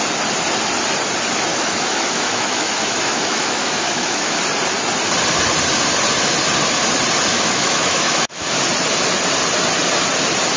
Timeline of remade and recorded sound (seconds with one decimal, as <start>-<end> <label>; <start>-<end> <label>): 0.0-1.5 recorded; 1.5-4.4 remade; 4.4-7.3 recorded; 7.3-8.5 remade; 8.5-10.6 recorded